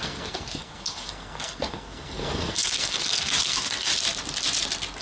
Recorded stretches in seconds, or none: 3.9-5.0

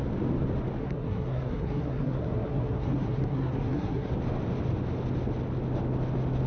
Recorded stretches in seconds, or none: 0.0-0.8; 4.1-6.5

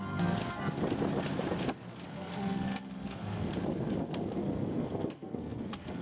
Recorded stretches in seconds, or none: 0.4-2.1; 3.5-4.0